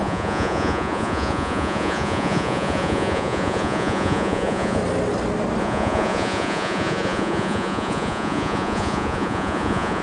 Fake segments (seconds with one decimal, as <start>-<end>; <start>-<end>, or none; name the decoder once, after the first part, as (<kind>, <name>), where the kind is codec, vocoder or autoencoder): 0.0-4.8 (vocoder, Vocos); 5.6-10.0